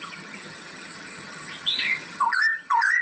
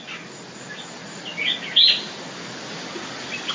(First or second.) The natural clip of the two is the second